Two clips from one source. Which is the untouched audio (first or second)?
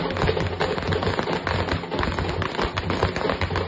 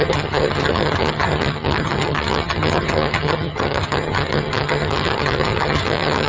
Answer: first